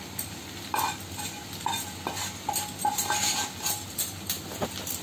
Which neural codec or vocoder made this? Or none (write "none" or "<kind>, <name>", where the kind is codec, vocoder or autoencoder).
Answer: none